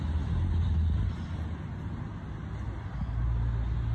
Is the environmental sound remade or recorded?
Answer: recorded